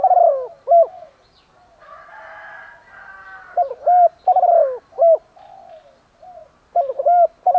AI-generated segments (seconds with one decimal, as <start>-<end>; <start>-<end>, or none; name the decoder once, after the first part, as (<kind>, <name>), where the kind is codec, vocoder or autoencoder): none